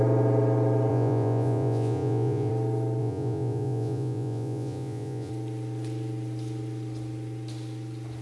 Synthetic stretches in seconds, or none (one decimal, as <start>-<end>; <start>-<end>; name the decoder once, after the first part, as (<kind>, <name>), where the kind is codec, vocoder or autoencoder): 0.9-2.5 (vocoder, Vocos); 3.0-5.3